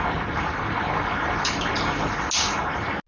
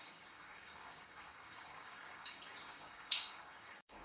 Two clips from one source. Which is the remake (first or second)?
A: second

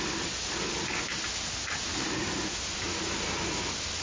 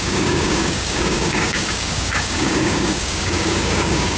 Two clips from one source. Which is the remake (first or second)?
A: second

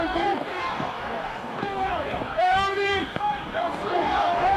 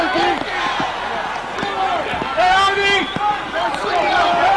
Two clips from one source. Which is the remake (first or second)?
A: first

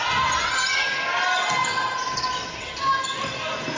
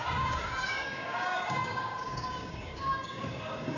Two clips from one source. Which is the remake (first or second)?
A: second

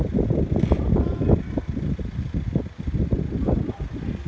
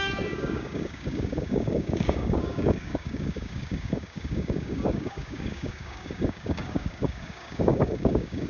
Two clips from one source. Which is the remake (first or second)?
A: second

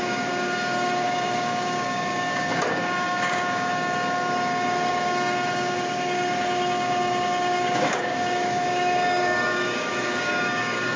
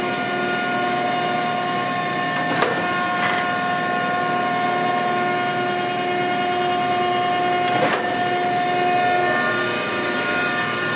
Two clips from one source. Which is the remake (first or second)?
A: first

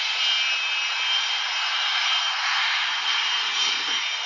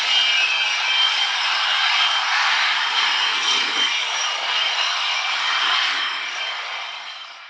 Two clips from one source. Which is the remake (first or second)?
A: second